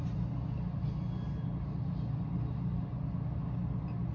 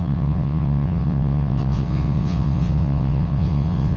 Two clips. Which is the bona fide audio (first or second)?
first